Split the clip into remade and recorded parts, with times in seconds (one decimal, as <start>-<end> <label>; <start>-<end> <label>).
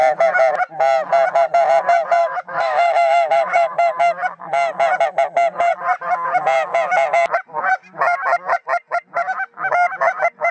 0.0-2.2 recorded; 2.2-4.0 remade; 4.0-10.5 recorded